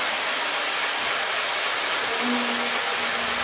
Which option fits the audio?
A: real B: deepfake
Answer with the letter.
A